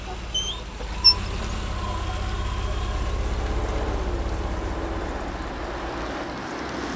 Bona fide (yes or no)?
yes